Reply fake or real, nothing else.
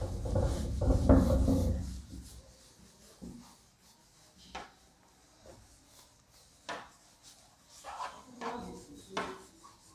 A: real